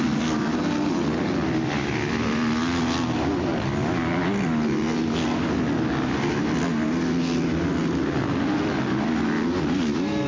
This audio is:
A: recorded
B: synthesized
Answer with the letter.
A